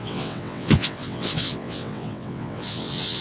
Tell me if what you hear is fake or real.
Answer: fake